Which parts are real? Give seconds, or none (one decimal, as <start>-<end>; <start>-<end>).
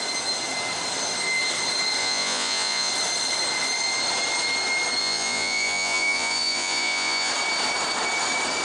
0.0-2.0; 2.9-5.0; 7.3-8.6